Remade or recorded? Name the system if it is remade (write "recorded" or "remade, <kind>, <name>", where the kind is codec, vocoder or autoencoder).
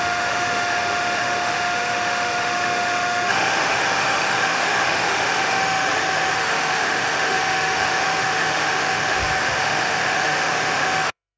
remade, autoencoder, DAC-VAE